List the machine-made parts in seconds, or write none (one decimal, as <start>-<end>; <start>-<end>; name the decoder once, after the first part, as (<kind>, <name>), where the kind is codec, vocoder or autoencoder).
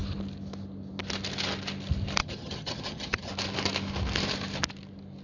2.2-3.3 (vocoder, HiFi-GAN)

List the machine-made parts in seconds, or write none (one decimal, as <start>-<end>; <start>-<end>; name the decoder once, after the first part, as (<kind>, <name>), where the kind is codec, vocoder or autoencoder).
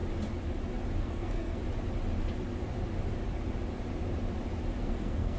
1.0-1.6 (codec, SNAC); 4.8-5.4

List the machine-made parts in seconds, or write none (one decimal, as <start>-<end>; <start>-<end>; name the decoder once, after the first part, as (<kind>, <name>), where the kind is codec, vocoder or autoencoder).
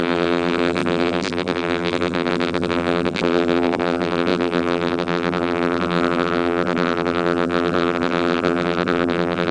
0.0-9.5 (vocoder, BigVGAN v2)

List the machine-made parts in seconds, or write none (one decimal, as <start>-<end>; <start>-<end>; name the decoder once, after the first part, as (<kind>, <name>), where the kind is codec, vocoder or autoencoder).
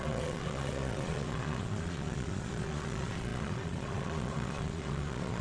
0.0-5.4 (vocoder, Vocos)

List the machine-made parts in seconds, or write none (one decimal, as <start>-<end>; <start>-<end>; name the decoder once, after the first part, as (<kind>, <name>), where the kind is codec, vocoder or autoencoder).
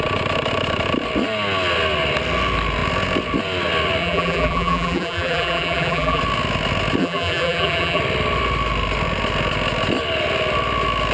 4.0-6.2 (vocoder, BigVGAN v2); 7.0-8.0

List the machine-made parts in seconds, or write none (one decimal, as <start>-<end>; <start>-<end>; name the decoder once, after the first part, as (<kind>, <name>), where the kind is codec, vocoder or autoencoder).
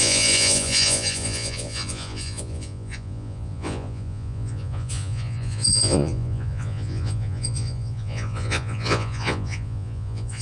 0.0-10.4 (vocoder, Vocos)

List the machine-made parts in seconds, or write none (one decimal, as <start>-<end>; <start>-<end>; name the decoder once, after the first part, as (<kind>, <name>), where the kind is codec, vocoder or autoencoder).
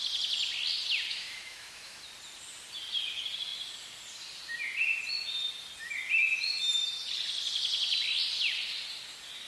1.1-2.0 (autoencoder, DAC-VAE)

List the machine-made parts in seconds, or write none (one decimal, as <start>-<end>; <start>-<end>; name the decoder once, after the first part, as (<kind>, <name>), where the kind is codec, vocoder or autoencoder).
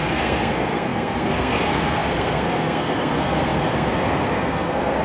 0.0-5.0 (codec, SNAC)